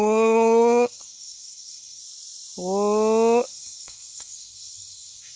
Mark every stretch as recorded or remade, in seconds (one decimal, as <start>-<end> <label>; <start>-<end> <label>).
0.0-2.0 remade; 2.0-3.5 recorded; 3.5-5.4 remade

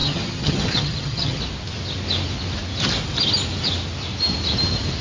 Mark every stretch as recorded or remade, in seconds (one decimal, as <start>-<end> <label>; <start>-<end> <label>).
0.0-1.4 remade; 1.4-5.0 recorded

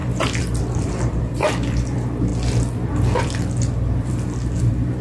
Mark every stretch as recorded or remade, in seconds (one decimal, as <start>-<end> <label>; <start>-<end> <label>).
0.0-2.3 remade; 2.3-2.9 recorded; 2.9-5.0 remade

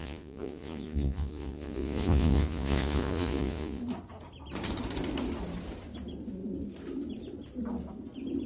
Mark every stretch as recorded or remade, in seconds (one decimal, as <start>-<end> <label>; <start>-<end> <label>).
0.0-3.8 remade; 3.8-8.5 recorded

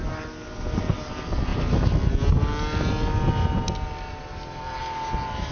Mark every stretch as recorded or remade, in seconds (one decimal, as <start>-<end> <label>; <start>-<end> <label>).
0.0-5.5 recorded

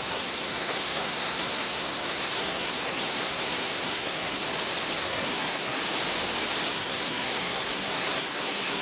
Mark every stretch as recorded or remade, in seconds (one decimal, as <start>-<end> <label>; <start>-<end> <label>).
0.0-4.4 remade; 4.4-5.0 recorded; 5.0-5.8 remade; 5.8-6.7 recorded; 6.7-8.8 remade

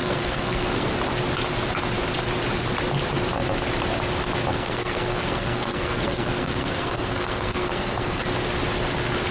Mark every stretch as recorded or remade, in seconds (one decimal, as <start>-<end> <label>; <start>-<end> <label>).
0.0-0.9 remade; 0.9-4.5 recorded; 4.5-8.2 remade; 8.2-9.3 recorded